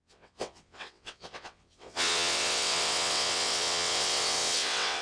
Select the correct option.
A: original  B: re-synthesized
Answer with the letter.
B